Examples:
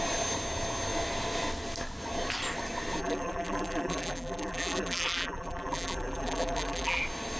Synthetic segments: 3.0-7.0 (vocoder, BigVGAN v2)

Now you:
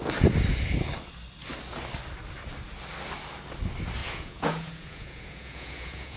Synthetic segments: 4.0-6.2 (vocoder, Vocos)

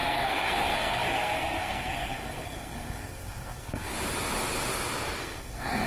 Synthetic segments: 0.0-3.9 (codec, SNAC); 5.2-5.9

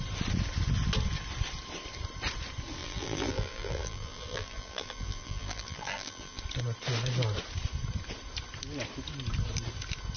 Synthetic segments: 2.8-6.4 (vocoder, BigVGAN v2)

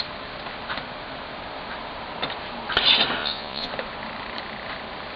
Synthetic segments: 3.2-3.7 (vocoder, Vocos)

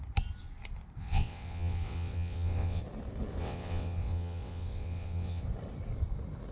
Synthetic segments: 1.0-2.8 (vocoder, WaveNeXt); 3.4-5.4

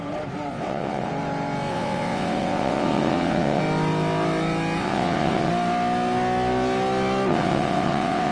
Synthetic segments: 0.5-1.1 (vocoder, WaveNeXt); 1.7-3.6; 4.8-5.5; 7.3-8.3